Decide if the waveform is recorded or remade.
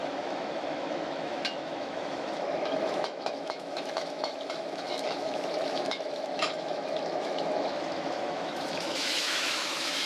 remade